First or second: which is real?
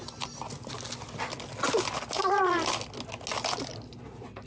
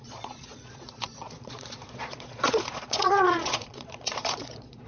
first